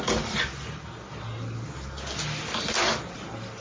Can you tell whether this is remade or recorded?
recorded